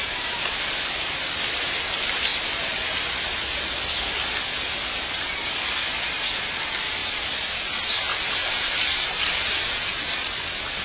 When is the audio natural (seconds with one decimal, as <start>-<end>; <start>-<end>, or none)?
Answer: 0.6-7.0; 10.0-10.8